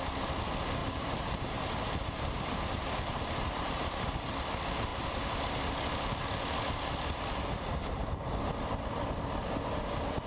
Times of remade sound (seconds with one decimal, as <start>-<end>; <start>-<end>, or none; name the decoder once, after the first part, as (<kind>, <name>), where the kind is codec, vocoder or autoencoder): 0.8-4.3 (vocoder, BigVGAN v2)